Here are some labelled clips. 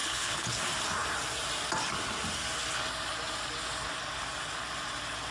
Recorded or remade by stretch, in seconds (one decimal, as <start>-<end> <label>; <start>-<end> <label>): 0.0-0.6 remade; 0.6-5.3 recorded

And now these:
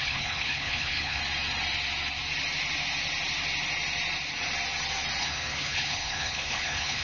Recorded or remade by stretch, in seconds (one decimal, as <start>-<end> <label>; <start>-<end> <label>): 0.0-1.2 remade; 1.2-5.2 recorded; 5.2-7.0 remade

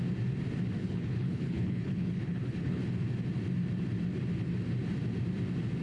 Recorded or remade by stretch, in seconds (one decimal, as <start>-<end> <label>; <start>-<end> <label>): 0.0-0.8 recorded; 0.8-2.8 remade; 2.8-5.8 recorded

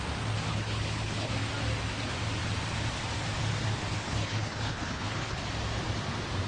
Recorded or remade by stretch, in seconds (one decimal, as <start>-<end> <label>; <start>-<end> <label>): 0.0-0.5 recorded; 0.5-1.3 remade; 1.3-3.9 recorded; 3.9-5.4 remade; 5.4-6.5 recorded